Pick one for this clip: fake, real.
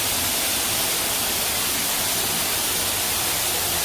fake